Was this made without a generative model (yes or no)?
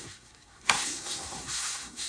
no